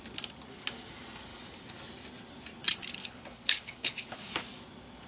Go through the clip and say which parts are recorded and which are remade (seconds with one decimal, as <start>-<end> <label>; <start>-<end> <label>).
0.0-3.0 recorded; 3.0-4.3 remade; 4.3-5.1 recorded